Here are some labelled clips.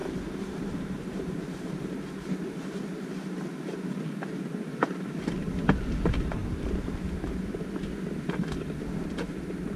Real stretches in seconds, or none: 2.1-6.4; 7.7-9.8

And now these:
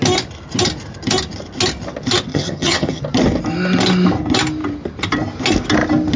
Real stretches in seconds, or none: 0.0-2.3; 3.0-6.2

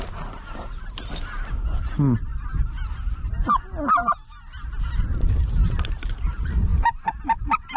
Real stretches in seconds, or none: 0.0-7.8